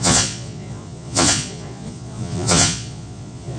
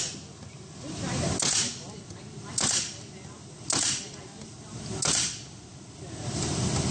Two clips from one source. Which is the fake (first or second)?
first